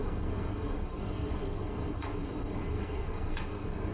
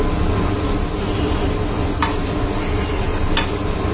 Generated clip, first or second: first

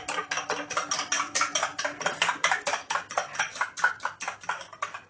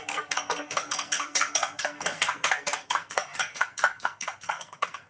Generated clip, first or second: second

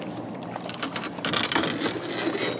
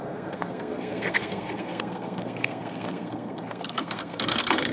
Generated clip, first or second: second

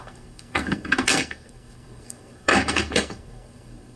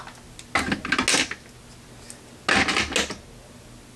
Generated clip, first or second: first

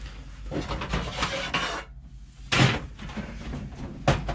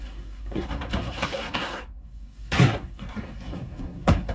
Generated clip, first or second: second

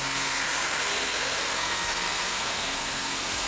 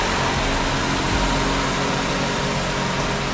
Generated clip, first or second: first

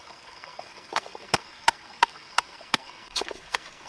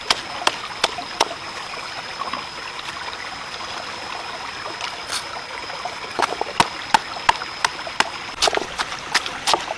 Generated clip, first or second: first